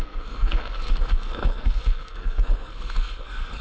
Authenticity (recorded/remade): remade